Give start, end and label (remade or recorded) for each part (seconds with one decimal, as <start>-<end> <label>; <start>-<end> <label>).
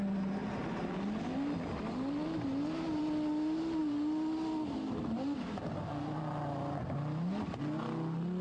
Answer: 0.0-8.4 recorded